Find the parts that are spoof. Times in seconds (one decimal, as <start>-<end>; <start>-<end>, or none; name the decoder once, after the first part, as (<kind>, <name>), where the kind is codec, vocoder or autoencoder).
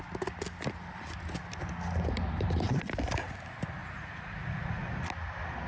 3.8-5.0 (vocoder, Vocos)